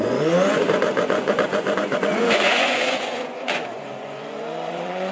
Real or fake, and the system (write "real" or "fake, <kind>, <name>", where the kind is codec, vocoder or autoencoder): fake, vocoder, Vocos